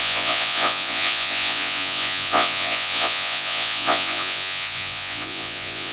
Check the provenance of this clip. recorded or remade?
remade